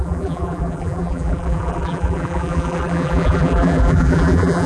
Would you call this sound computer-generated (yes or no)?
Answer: yes